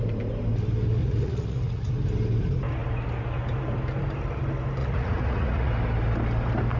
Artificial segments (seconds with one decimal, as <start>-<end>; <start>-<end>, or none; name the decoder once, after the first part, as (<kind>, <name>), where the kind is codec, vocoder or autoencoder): 1.0-1.9 (vocoder, Vocos); 4.8-5.7

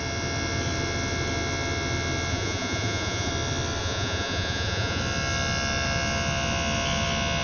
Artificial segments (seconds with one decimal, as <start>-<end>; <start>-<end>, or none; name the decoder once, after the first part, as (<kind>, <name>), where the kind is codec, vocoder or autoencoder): 2.3-3.3 (vocoder, Vocos); 3.8-5.0

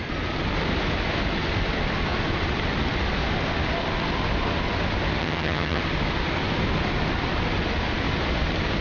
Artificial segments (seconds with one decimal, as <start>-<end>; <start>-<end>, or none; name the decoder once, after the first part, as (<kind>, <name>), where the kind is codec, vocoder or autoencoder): 5.2-5.8 (vocoder, HiFi-GAN)

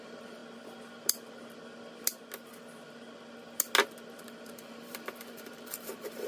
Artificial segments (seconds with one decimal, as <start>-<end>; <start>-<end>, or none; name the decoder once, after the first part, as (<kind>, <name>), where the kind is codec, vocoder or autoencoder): 0.0-0.4 (vocoder, BigVGAN v2); 4.2-6.3